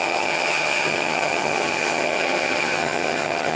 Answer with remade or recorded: remade